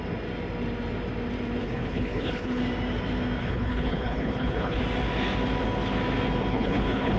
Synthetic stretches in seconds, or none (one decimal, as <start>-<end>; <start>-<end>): 1.6-2.6; 3.4-4.8; 6.5-7.2